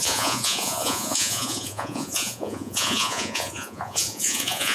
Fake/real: fake